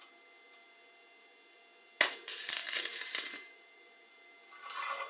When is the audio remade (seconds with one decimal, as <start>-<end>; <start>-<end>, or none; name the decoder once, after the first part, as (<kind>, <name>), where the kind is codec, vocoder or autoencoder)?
2.6-4.3 (vocoder, BigVGAN v2)